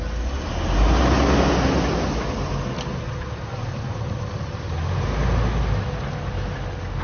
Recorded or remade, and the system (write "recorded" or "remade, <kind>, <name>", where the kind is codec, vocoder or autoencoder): recorded